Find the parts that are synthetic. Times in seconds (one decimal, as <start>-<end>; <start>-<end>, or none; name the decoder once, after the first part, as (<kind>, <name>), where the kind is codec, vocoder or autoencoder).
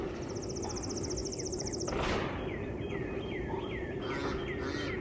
1.2-4.1 (vocoder, BigVGAN v2)